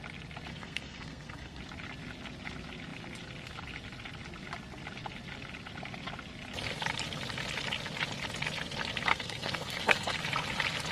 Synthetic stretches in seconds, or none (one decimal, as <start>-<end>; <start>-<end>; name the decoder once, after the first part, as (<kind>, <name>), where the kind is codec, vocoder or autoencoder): 0.5-1.6 (codec, SNAC); 9.1-10.2